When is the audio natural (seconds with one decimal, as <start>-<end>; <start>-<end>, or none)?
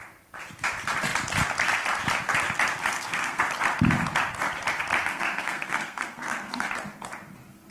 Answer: 0.0-2.9; 3.4-5.1; 6.7-7.7